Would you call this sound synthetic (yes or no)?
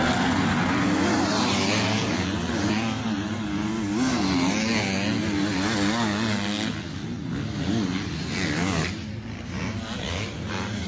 no